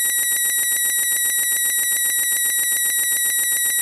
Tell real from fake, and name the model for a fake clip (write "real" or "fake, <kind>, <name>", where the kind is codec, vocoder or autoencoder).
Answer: real